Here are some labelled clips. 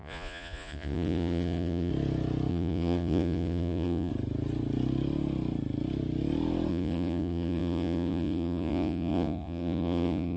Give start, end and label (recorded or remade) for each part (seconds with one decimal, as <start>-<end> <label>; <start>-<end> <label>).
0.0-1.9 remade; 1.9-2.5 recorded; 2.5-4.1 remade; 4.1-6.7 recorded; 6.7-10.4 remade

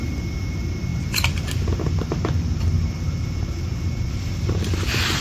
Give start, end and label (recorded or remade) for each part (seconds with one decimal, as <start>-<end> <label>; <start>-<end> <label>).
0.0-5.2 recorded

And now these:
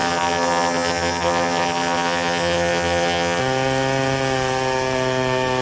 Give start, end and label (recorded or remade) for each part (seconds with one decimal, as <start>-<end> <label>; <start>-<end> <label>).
0.0-3.4 remade; 3.4-5.6 recorded

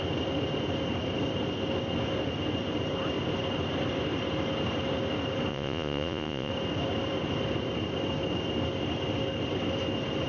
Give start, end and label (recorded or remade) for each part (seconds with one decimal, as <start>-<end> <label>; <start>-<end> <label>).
0.0-5.5 recorded; 5.5-6.5 remade; 6.5-10.3 recorded

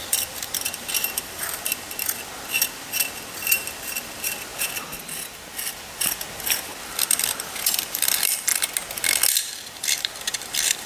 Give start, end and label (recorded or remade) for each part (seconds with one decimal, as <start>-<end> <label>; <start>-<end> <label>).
0.0-4.5 remade; 4.5-6.8 recorded; 6.8-8.5 remade; 8.5-9.4 recorded; 9.4-10.9 remade